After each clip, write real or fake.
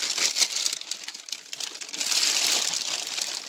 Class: real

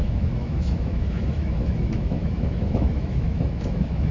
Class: fake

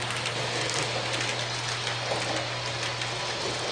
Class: real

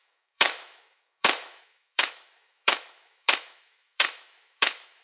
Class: fake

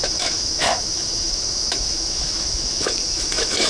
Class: fake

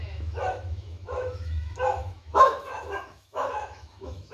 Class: fake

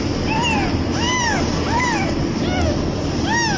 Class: real